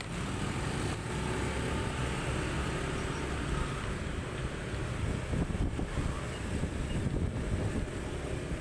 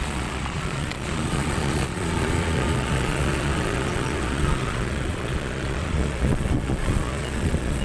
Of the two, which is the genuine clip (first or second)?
first